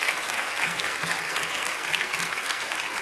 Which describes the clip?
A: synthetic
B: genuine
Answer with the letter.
A